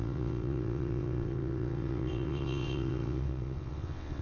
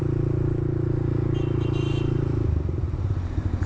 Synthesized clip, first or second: first